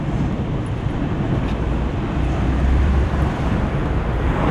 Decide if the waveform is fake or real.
fake